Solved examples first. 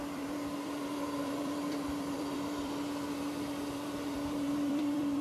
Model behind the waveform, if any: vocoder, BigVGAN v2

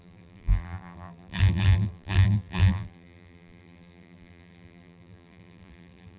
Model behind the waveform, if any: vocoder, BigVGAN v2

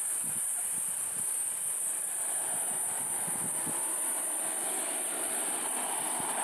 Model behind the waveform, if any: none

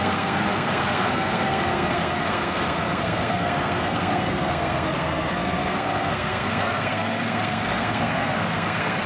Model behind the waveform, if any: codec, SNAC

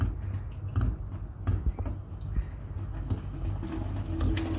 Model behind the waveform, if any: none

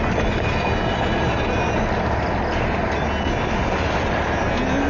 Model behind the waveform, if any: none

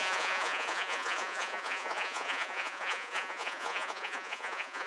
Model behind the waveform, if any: vocoder, Vocos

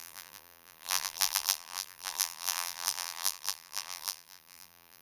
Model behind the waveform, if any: vocoder, BigVGAN v2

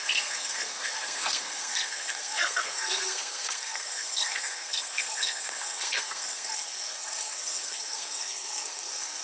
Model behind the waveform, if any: codec, SNAC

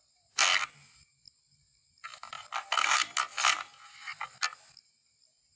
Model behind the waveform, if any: none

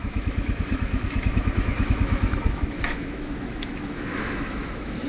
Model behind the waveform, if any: autoencoder, DAC-VAE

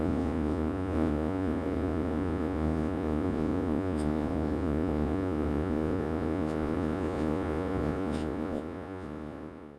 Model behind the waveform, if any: vocoder, Vocos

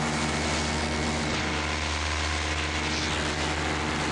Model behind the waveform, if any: none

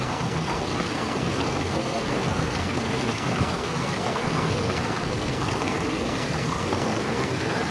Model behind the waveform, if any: codec, SNAC